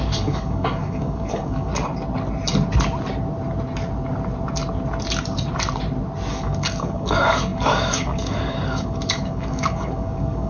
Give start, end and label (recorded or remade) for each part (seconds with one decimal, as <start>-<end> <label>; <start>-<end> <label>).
0.0-1.7 remade; 1.7-6.3 recorded; 6.3-10.5 remade